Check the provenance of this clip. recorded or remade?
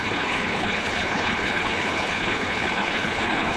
remade